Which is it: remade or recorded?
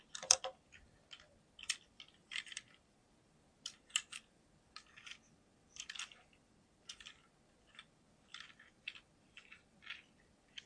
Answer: remade